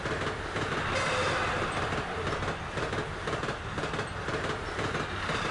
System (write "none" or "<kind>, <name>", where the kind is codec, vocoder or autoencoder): none